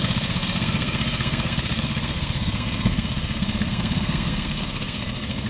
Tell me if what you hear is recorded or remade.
remade